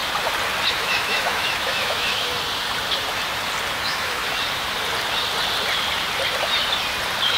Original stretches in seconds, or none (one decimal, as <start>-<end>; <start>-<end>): 0.0-0.7; 2.3-3.8; 4.2-7.4